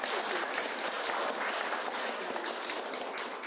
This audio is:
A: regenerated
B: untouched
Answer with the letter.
B